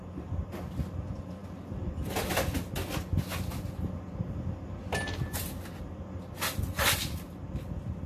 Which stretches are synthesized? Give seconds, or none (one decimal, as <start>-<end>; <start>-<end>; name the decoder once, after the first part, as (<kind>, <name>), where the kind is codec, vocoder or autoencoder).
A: none